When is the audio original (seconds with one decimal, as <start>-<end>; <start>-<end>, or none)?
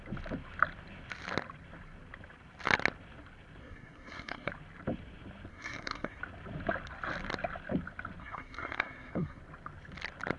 0.0-3.6; 4.5-5.5; 6.2-8.2; 9.4-10.4